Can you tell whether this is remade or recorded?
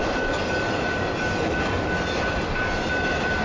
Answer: recorded